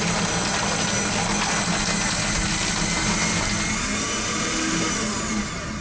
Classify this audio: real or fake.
real